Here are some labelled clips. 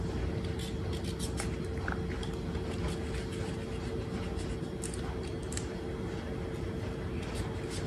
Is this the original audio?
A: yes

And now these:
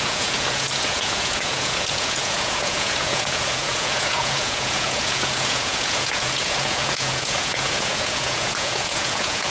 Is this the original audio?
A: no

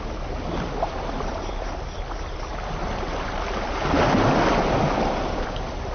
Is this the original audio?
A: yes